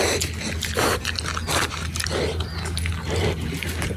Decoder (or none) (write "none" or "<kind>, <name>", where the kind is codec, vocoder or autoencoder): none